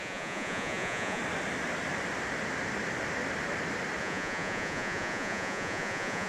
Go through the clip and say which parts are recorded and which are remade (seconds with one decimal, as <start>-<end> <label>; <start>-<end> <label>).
0.0-1.2 remade; 1.2-4.0 recorded; 4.0-6.3 remade